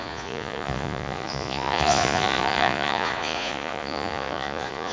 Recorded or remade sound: remade